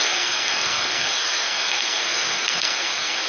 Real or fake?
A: fake